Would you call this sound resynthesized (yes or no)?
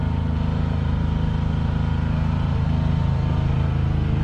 no